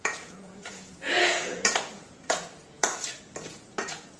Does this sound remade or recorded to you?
remade